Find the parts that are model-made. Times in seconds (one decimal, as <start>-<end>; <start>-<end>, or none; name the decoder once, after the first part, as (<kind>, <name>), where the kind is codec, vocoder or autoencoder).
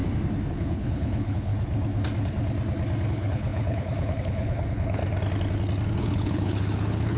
0.5-1.5 (codec, HILCodec); 3.1-5.0; 6.0-7.2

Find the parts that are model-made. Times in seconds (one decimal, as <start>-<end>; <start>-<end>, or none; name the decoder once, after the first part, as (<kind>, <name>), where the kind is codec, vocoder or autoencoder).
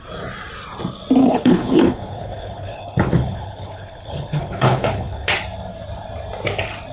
1.2-5.3 (codec, HILCodec)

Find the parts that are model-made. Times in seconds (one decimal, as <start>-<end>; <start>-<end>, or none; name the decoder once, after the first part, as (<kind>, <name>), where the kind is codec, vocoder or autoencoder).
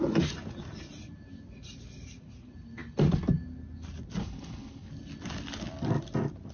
4.2-4.9 (codec, HILCodec)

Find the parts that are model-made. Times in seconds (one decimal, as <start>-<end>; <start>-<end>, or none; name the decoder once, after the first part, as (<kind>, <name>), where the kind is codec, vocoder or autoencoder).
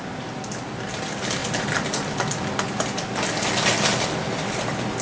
none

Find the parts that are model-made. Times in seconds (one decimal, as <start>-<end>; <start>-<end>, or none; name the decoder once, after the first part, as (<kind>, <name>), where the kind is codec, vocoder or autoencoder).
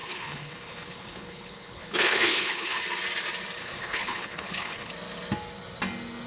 0.0-2.8 (codec, HILCodec); 3.6-4.9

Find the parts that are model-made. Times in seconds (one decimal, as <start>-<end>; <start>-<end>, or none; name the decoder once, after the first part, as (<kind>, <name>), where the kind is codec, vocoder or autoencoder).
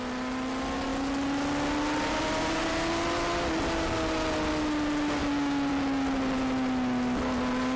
none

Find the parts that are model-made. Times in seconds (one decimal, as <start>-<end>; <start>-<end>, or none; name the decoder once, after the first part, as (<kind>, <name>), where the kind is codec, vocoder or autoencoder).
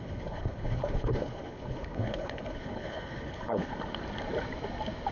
0.0-3.7 (codec, HILCodec)